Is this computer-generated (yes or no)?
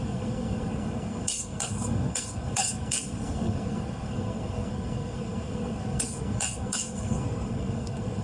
yes